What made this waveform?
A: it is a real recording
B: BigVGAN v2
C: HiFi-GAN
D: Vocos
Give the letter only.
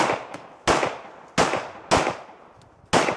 A